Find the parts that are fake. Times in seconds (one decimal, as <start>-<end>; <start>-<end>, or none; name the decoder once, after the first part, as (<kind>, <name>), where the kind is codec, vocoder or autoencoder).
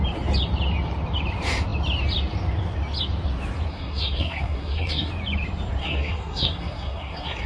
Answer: 3.7-5.1 (codec, SNAC); 5.8-7.5